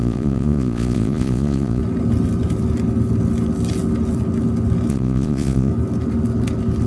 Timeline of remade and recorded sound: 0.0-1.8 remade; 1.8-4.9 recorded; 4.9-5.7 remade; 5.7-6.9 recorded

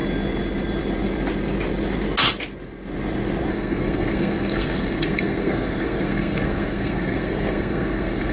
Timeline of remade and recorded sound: 0.0-3.5 recorded; 3.5-8.3 remade

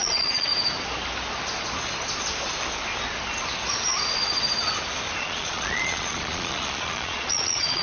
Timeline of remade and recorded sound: 0.0-0.5 remade; 0.5-5.2 recorded; 5.2-7.8 remade

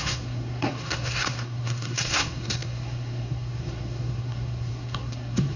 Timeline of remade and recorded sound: 0.0-5.6 remade

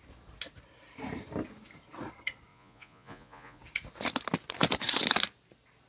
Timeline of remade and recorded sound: 0.0-2.5 recorded; 2.5-3.6 remade; 3.6-5.9 recorded

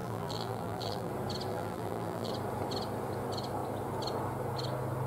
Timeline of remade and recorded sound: 0.0-1.1 remade; 1.1-1.5 recorded; 1.5-2.3 remade; 2.3-5.1 recorded